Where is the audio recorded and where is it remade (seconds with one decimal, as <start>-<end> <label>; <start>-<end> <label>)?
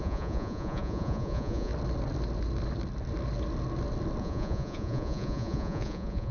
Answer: 0.0-1.7 remade; 1.7-4.2 recorded; 4.2-6.3 remade